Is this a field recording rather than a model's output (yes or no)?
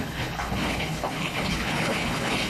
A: no